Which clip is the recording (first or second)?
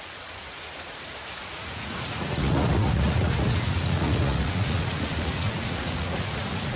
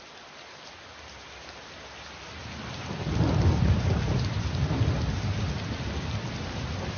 second